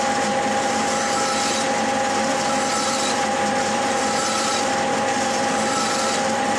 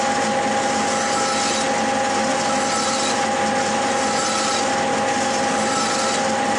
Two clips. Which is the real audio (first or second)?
second